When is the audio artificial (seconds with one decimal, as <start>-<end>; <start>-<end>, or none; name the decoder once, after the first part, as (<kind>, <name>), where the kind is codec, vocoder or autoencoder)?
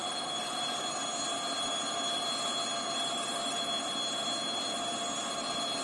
0.0-0.8 (vocoder, BigVGAN v2)